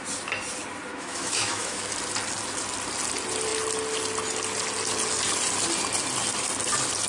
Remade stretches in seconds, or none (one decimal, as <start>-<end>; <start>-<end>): 0.9-1.9